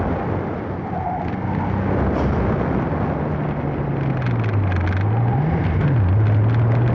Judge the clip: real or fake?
real